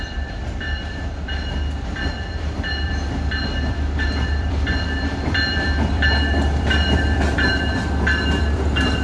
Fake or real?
fake